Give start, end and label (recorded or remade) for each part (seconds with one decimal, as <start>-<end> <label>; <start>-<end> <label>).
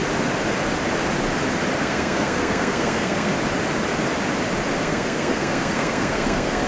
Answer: 0.0-1.8 recorded; 1.8-3.3 remade; 3.3-4.8 recorded; 4.8-6.7 remade